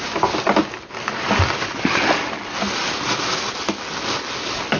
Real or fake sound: real